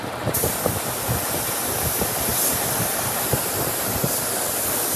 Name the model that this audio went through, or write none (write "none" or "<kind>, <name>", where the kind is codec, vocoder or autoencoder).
none